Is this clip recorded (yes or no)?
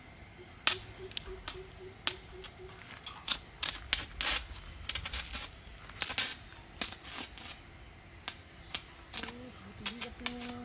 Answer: yes